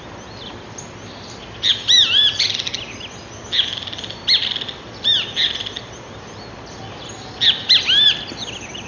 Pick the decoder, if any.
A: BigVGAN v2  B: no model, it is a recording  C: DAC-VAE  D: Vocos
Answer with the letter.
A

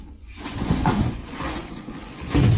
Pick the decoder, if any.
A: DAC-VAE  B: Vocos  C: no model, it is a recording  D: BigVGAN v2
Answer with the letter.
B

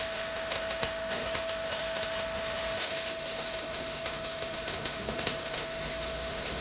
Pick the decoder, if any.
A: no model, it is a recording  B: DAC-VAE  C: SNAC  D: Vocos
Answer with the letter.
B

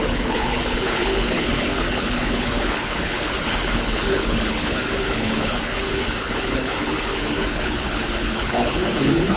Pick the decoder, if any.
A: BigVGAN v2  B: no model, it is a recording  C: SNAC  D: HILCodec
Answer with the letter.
D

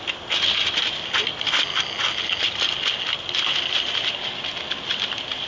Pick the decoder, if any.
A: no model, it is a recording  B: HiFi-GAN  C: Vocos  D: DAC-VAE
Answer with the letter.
A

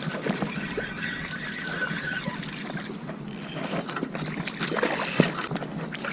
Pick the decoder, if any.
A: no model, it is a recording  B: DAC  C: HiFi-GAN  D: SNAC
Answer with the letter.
A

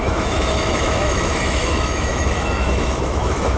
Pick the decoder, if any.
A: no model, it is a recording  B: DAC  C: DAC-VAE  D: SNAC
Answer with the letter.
C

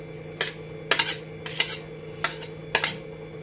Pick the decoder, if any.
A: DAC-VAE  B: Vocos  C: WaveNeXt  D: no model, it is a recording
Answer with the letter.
D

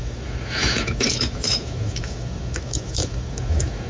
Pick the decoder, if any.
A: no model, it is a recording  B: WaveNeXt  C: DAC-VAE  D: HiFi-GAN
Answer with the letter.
C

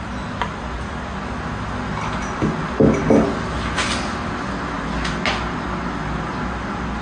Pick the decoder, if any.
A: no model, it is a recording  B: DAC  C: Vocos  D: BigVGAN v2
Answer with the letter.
A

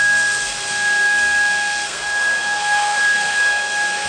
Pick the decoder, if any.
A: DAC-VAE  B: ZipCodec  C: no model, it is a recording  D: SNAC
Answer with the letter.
D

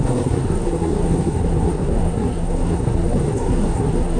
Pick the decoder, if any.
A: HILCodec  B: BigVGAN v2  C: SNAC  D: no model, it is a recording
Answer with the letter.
C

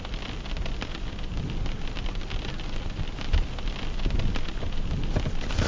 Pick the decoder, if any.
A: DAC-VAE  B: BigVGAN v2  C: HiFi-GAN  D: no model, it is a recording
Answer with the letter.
D